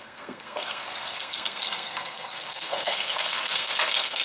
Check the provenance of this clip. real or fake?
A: fake